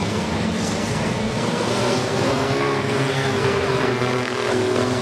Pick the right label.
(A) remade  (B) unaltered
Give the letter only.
A